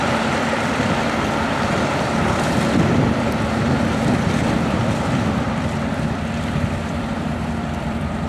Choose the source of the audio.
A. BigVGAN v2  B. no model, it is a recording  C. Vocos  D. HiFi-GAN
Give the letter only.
A